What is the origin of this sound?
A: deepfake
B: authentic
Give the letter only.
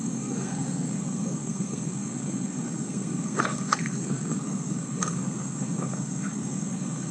A